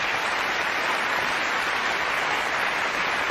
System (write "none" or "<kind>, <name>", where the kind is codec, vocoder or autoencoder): none